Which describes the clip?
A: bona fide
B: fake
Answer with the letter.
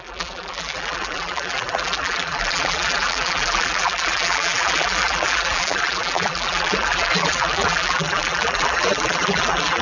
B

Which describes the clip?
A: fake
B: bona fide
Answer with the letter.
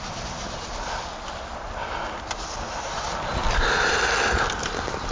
B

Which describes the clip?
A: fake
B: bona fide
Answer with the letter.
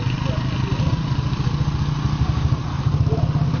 B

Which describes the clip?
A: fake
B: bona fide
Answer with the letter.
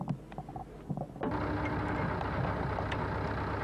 B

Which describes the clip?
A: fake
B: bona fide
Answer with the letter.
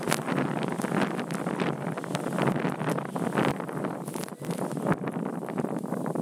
B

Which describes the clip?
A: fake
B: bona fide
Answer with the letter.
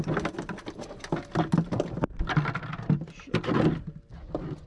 B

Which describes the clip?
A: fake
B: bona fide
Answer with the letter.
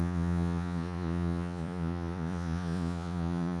A